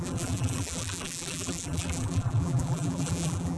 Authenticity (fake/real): fake